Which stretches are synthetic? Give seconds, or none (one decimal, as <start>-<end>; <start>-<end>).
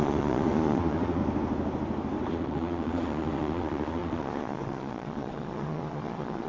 0.0-1.2; 2.3-6.5